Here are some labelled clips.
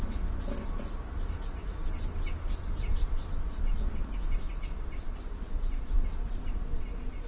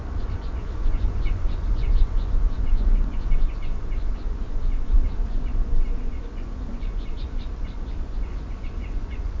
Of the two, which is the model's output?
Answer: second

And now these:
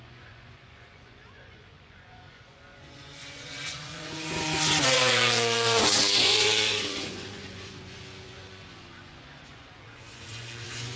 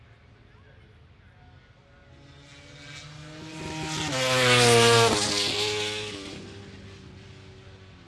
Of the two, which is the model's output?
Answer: first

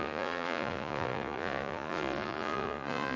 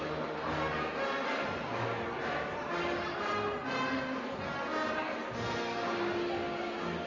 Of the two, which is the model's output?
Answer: first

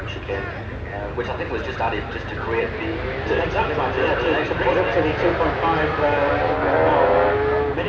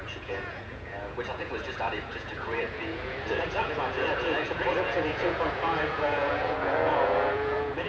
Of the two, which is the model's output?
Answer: second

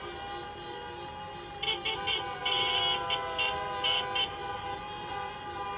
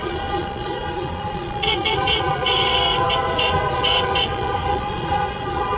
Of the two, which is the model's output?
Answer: second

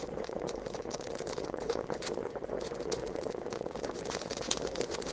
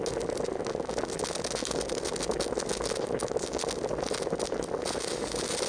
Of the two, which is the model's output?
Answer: first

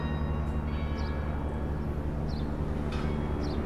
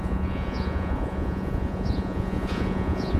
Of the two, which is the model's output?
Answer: second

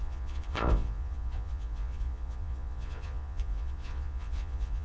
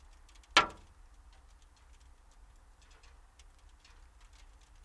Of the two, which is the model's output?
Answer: first